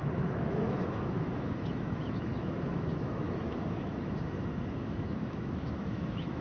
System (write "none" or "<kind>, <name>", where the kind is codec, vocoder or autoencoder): autoencoder, DAC-VAE